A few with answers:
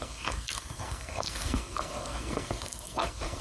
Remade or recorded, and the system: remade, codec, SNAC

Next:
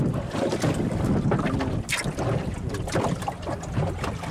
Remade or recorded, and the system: recorded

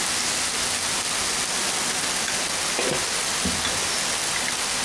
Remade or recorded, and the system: recorded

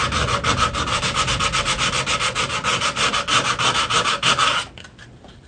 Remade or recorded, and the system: recorded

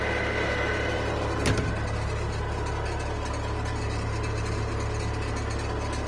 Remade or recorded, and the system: recorded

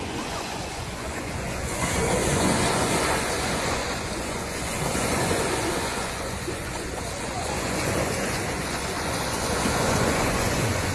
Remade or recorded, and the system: remade, vocoder, Vocos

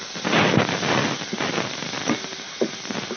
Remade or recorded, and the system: recorded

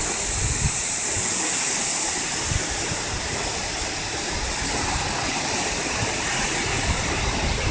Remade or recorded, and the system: recorded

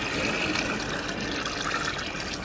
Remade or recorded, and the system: recorded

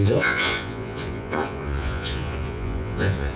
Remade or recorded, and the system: remade, vocoder, Vocos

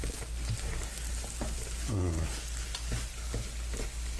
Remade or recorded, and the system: recorded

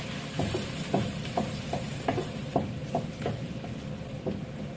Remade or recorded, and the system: recorded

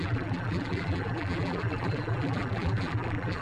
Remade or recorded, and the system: remade, vocoder, BigVGAN v2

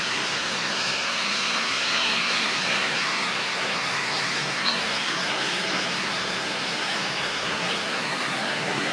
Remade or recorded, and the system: remade, codec, SNAC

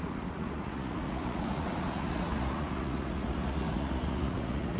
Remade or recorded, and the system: remade, vocoder, Vocos